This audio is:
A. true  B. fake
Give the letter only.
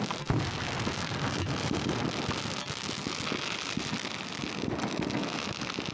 A